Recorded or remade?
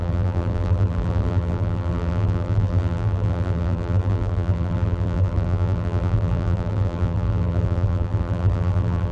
remade